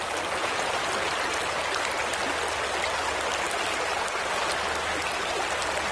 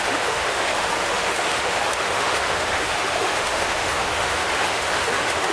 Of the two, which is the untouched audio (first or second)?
first